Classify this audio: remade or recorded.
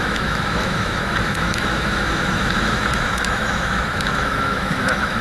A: remade